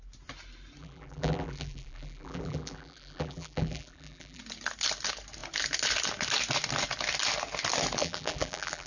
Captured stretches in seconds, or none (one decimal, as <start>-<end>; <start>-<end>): 0.0-0.8; 4.4-8.0